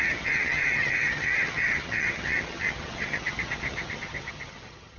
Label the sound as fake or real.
fake